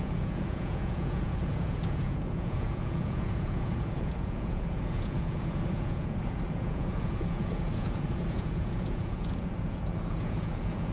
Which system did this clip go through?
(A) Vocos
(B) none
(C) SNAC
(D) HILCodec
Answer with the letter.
A